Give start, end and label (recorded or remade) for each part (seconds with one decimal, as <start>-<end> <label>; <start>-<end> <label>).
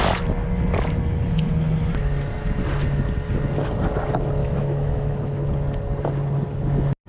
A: 0.0-4.4 recorded; 4.4-5.4 remade; 5.4-7.1 recorded